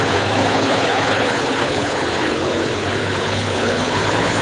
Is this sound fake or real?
fake